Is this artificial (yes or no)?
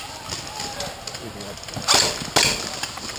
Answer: no